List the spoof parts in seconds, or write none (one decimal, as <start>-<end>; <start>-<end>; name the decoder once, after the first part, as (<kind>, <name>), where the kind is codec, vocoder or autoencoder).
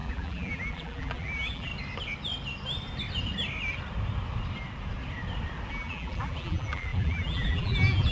0.0-1.7 (vocoder, BigVGAN v2); 5.7-8.1